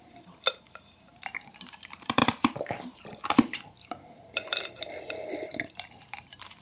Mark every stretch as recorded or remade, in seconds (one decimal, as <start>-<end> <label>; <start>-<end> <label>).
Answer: 0.0-6.6 remade